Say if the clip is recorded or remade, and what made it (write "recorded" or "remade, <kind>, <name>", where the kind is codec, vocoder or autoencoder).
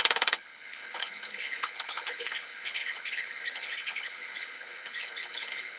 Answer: remade, codec, HILCodec